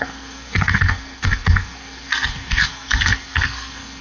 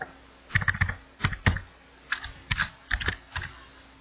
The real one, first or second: second